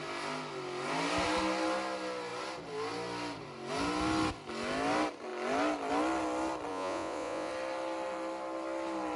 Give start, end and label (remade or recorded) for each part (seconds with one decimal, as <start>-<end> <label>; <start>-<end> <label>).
0.0-6.7 recorded; 6.7-7.5 remade; 7.5-9.2 recorded